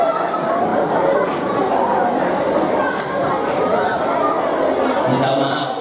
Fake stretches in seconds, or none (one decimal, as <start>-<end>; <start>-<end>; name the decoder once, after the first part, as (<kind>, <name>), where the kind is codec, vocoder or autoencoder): none